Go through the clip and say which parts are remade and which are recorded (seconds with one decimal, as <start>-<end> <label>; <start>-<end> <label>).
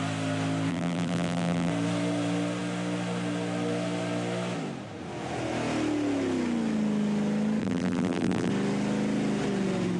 0.0-0.7 recorded; 0.7-1.7 remade; 1.7-7.6 recorded; 7.6-8.5 remade; 8.5-10.0 recorded